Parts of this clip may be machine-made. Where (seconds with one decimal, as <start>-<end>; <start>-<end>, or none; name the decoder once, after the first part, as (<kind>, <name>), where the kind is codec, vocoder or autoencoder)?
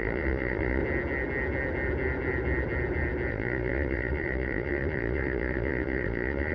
0.0-0.8 (vocoder, Vocos); 3.3-6.5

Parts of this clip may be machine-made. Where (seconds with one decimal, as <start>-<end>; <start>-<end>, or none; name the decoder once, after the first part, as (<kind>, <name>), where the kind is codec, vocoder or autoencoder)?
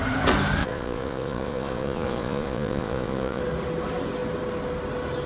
0.6-3.4 (vocoder, Vocos)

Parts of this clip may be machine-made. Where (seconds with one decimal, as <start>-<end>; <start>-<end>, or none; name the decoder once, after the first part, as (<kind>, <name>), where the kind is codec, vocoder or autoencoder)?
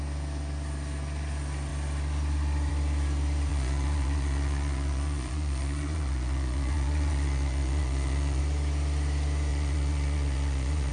3.5-8.4 (vocoder, Vocos); 9.5-10.9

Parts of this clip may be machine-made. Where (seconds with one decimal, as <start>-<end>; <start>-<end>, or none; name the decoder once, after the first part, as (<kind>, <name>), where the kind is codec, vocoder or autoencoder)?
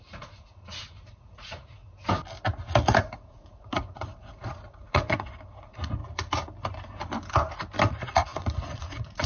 0.0-1.8 (vocoder, Vocos); 3.0-6.0; 7.9-9.3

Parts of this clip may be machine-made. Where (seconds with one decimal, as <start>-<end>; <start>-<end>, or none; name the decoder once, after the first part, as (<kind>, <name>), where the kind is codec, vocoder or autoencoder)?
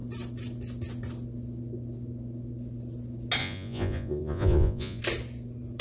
3.4-5.0 (vocoder, Vocos)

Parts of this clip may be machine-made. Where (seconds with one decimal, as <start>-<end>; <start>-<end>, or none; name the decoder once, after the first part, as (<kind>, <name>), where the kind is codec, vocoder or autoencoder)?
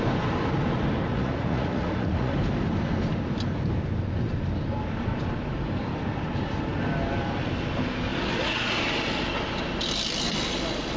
1.1-2.3 (vocoder, Vocos); 8.1-8.8